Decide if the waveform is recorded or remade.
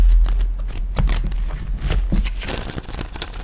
recorded